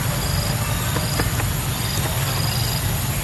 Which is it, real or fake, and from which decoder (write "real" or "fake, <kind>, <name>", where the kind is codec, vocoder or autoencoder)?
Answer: real